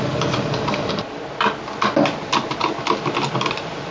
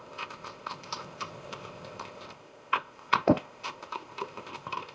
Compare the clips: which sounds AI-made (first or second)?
second